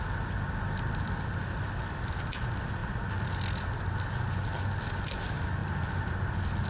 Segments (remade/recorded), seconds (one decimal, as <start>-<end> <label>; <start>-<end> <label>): 0.0-6.7 recorded